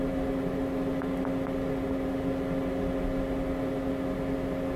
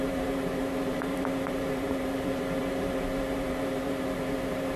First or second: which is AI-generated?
second